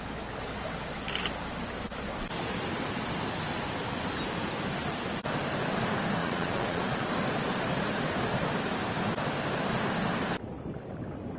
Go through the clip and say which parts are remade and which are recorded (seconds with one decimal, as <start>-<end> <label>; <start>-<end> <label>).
0.0-6.2 recorded; 6.2-7.1 remade; 7.1-11.4 recorded